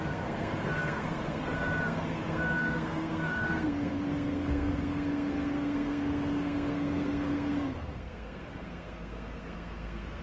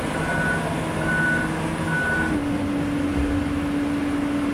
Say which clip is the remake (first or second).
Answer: first